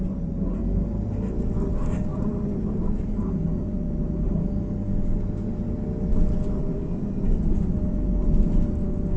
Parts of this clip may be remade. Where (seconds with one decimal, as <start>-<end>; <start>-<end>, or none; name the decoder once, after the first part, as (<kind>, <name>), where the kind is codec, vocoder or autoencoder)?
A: 2.1-4.5 (vocoder, BigVGAN v2); 6.6-7.3